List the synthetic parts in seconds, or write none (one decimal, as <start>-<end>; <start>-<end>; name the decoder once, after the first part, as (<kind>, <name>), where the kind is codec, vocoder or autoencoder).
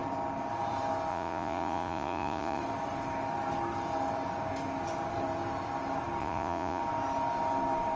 1.1-2.6 (vocoder, Vocos); 6.2-6.8